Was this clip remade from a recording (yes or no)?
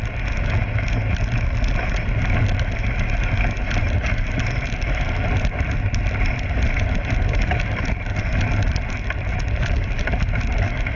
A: no